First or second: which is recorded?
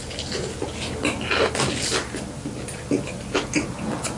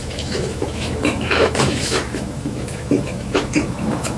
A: first